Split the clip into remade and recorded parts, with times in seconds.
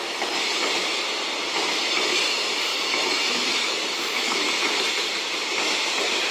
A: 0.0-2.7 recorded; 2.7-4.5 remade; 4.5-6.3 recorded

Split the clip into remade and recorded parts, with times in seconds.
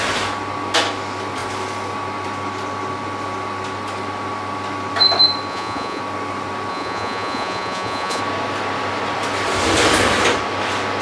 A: 0.0-5.5 recorded; 5.5-6.0 remade; 6.0-6.7 recorded; 6.7-8.2 remade; 8.2-11.0 recorded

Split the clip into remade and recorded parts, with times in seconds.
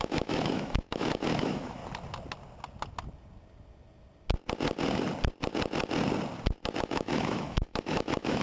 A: 0.0-1.8 remade; 1.8-6.8 recorded; 6.8-8.4 remade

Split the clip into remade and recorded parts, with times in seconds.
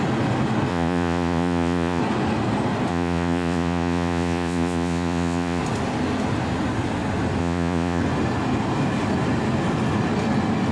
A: 0.0-0.7 recorded; 0.7-2.0 remade; 2.0-2.9 recorded; 2.9-5.6 remade; 5.6-7.4 recorded; 7.4-8.0 remade; 8.0-10.7 recorded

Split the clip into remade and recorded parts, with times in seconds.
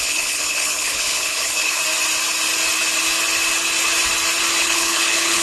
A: 0.0-1.8 remade; 1.8-4.6 recorded; 4.6-5.4 remade